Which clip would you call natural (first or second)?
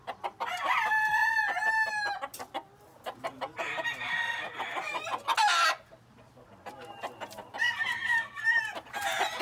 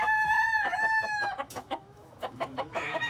first